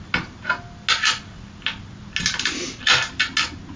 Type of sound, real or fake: real